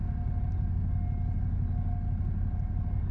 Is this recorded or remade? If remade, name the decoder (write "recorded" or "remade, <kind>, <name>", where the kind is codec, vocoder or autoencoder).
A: recorded